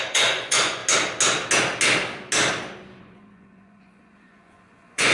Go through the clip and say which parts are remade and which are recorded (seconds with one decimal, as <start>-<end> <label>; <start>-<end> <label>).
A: 0.0-0.8 remade; 0.8-3.0 recorded; 3.0-5.1 remade

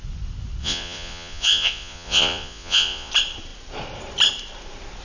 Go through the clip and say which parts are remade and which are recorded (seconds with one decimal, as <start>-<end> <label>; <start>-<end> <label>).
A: 0.0-0.6 recorded; 0.6-3.1 remade; 3.1-5.0 recorded